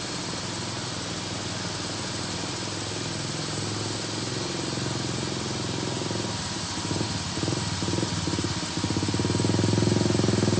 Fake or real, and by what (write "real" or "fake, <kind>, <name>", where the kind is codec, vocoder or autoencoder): real